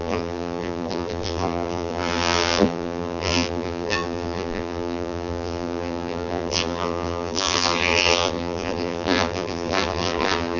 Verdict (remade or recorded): remade